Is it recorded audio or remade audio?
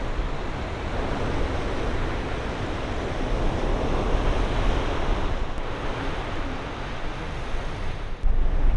recorded